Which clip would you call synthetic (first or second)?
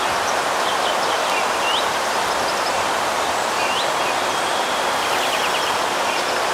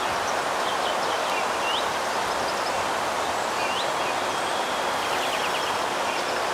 first